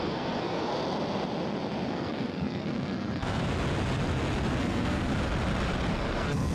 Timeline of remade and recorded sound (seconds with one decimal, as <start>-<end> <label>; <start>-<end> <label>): 0.0-0.7 remade; 0.7-1.9 recorded; 1.9-3.4 remade; 3.4-4.6 recorded; 4.6-5.1 remade; 5.1-5.9 recorded; 5.9-6.5 remade

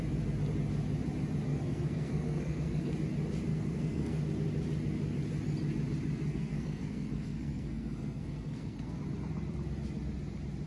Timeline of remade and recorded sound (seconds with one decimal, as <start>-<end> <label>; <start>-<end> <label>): 0.0-1.5 recorded; 1.5-2.9 remade; 2.9-3.5 recorded; 3.5-4.2 remade; 4.2-6.3 recorded; 6.3-9.0 remade; 9.0-10.7 recorded

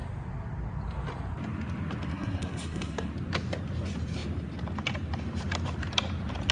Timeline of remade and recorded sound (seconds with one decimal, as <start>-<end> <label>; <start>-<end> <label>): 0.0-2.1 recorded; 2.1-3.1 remade; 3.1-6.5 recorded

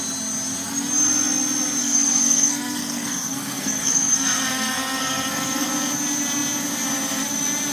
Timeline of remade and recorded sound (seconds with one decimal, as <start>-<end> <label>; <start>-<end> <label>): 0.0-1.8 recorded; 1.8-5.7 remade; 5.7-7.7 recorded

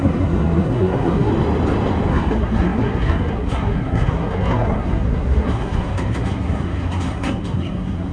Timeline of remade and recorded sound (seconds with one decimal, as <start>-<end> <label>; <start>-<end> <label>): 0.0-1.3 remade; 1.3-2.1 recorded; 2.1-8.1 remade

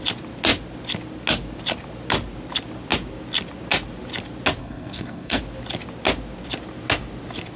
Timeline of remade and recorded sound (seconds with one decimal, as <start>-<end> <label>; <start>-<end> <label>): 0.0-4.6 recorded; 4.6-5.4 remade; 5.4-7.6 recorded

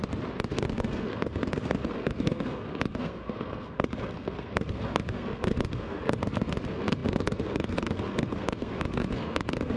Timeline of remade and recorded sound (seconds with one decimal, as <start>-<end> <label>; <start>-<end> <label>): 0.0-0.5 recorded; 0.5-9.8 remade

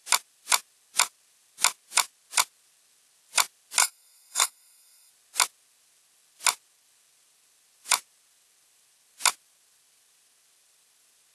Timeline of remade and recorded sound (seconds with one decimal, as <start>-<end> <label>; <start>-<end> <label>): 0.0-3.8 recorded; 3.8-5.1 remade; 5.1-11.3 recorded